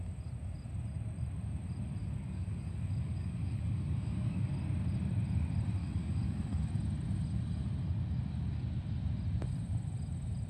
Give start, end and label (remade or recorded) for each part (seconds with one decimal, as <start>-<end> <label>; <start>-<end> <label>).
0.0-2.0 recorded; 2.0-4.5 remade; 4.5-5.8 recorded; 5.8-6.7 remade; 6.7-10.5 recorded